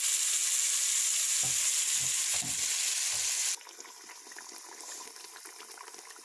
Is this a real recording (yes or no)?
yes